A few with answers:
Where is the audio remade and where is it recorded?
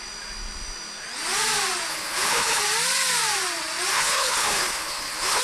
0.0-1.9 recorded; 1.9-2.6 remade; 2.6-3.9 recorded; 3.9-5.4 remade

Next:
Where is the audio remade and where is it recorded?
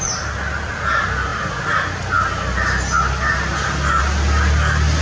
0.0-5.0 recorded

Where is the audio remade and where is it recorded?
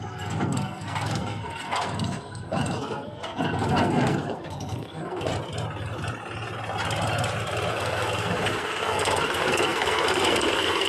0.0-5.3 remade; 5.3-7.7 recorded; 7.7-10.9 remade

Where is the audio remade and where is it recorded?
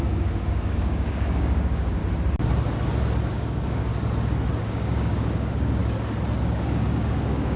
0.0-2.0 remade; 2.0-3.3 recorded; 3.3-3.9 remade; 3.9-4.6 recorded; 4.6-5.8 remade; 5.8-6.4 recorded; 6.4-7.6 remade